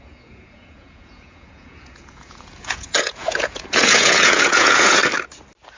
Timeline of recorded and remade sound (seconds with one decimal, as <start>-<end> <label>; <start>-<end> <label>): 0.0-5.0 remade; 5.0-5.8 recorded